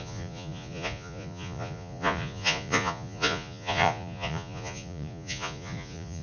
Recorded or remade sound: remade